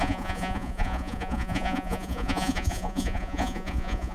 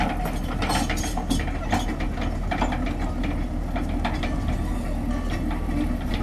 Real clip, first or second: second